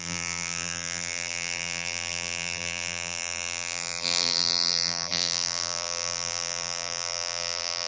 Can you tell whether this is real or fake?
fake